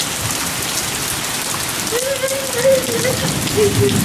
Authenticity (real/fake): real